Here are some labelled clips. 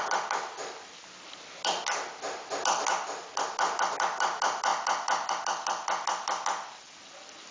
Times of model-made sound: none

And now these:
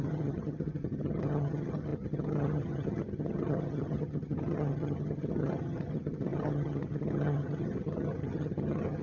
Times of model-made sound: 0.0-9.0

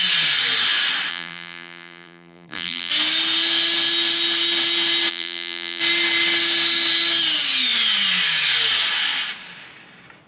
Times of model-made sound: 1.1-2.9; 5.1-5.8

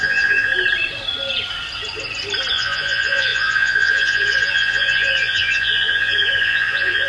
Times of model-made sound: 0.0-0.5; 2.5-7.1